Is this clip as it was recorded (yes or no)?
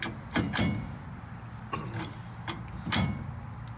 yes